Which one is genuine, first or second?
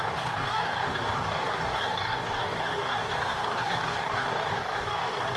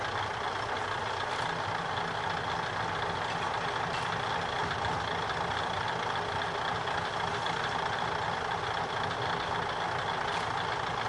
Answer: second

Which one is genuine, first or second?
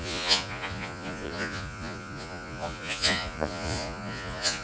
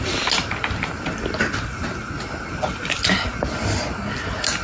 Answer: second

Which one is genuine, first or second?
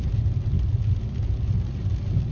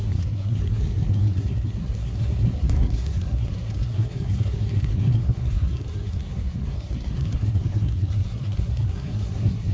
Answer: first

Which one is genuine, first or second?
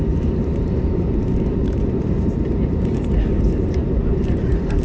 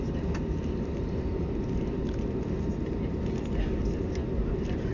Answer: second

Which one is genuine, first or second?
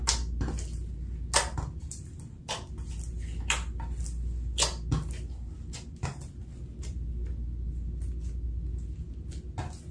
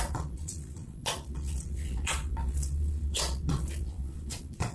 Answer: first